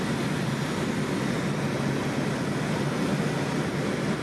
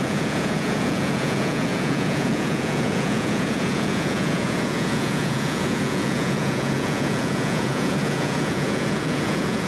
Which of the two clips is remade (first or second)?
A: second